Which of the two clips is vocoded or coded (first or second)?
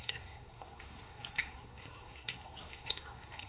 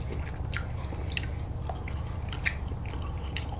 first